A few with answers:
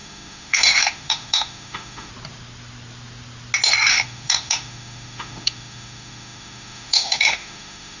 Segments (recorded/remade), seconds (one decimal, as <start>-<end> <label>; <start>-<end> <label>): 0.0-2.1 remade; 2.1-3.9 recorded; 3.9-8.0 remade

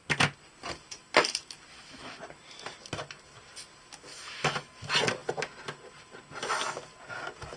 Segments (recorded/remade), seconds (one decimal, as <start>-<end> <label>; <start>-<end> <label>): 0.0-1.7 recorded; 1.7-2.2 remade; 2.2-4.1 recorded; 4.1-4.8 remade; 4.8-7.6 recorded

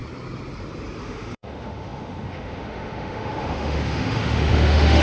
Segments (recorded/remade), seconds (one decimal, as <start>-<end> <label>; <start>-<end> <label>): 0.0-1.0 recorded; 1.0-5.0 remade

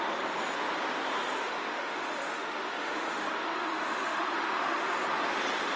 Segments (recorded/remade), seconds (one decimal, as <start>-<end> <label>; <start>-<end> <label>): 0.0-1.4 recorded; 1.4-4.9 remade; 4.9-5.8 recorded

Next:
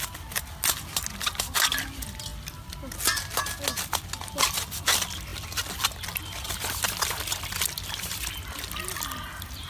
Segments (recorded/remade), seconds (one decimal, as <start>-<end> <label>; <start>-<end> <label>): 0.0-9.7 recorded

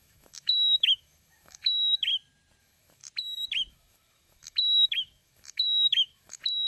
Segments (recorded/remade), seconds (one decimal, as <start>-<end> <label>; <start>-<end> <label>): 0.0-2.1 remade; 2.1-2.6 recorded; 2.6-3.0 remade; 3.0-3.7 recorded; 3.7-6.7 remade